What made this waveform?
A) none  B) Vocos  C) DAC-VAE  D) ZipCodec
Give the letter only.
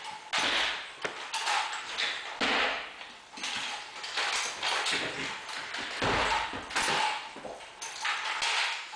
A